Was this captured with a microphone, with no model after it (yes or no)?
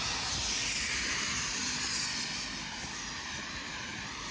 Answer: yes